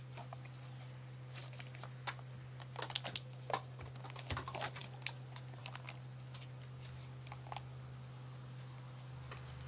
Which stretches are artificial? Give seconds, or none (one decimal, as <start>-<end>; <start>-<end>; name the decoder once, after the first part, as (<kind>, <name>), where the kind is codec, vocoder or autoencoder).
none